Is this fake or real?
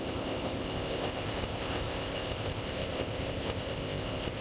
fake